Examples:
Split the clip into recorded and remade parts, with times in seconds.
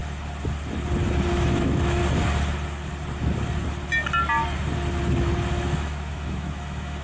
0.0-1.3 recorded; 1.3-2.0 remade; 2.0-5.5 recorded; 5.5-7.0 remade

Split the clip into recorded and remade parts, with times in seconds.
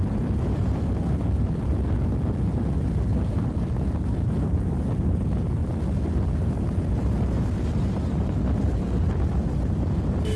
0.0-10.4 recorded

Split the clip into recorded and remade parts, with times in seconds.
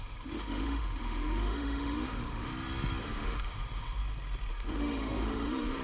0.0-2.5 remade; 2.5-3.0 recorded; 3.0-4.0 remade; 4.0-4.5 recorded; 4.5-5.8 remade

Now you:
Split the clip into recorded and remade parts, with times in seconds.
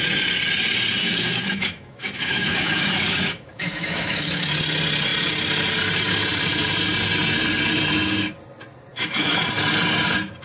0.0-1.0 recorded; 1.0-4.5 remade; 4.5-8.9 recorded; 8.9-9.4 remade; 9.4-10.4 recorded